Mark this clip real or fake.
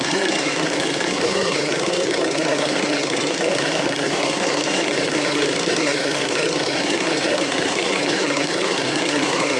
fake